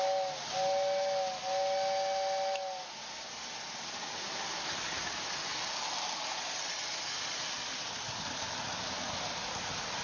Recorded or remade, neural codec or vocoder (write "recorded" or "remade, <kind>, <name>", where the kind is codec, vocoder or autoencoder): recorded